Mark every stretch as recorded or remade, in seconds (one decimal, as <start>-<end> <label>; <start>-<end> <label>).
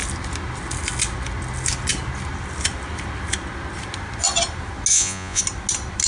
0.0-4.9 recorded; 4.9-5.4 remade; 5.4-6.1 recorded